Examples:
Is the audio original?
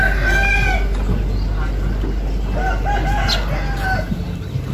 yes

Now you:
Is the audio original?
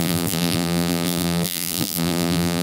no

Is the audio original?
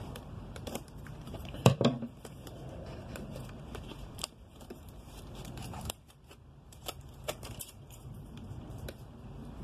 no